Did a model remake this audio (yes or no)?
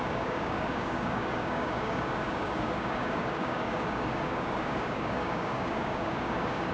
yes